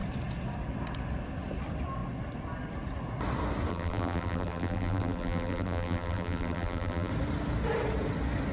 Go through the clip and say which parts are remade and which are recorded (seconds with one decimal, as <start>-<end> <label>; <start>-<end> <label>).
0.0-3.7 recorded; 3.7-7.1 remade; 7.1-8.5 recorded